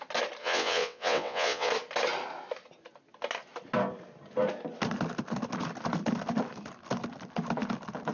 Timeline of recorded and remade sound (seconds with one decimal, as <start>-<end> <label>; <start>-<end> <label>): 0.0-0.4 recorded; 0.4-1.7 remade; 1.7-8.1 recorded